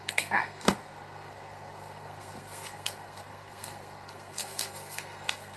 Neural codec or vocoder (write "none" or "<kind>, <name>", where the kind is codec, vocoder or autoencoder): codec, SNAC